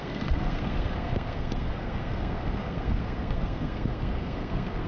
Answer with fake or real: fake